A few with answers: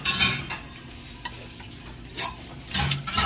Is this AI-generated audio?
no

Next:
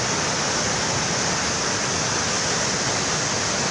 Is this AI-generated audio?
no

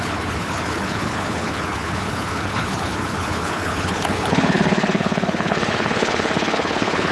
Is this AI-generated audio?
yes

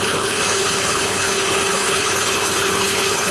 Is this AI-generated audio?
yes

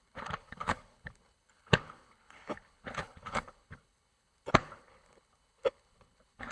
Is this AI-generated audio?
yes